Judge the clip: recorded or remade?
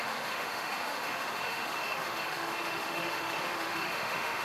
remade